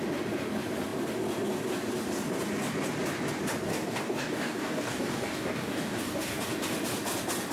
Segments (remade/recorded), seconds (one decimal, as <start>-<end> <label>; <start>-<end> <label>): 0.0-3.7 recorded; 3.7-6.4 remade; 6.4-7.5 recorded